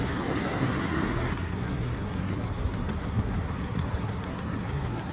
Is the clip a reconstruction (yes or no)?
yes